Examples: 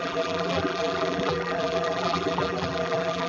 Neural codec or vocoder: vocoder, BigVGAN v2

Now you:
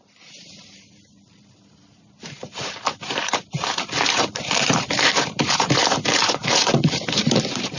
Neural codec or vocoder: vocoder, BigVGAN v2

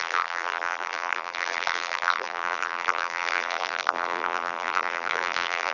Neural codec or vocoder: vocoder, BigVGAN v2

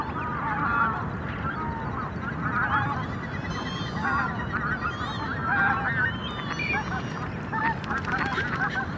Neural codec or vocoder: none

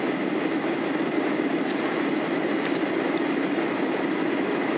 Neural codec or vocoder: vocoder, BigVGAN v2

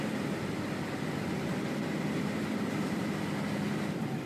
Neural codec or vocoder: none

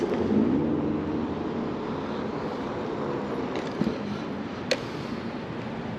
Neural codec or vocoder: none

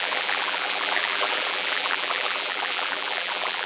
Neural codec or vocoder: vocoder, BigVGAN v2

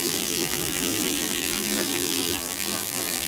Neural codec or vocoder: vocoder, BigVGAN v2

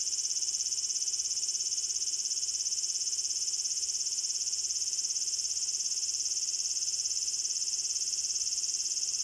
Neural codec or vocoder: vocoder, BigVGAN v2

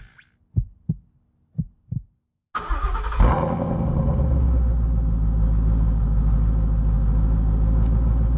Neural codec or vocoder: none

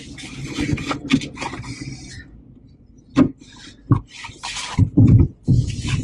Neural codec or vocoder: none